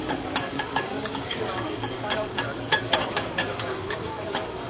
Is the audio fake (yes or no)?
yes